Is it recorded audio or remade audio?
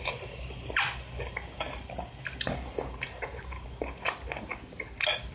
recorded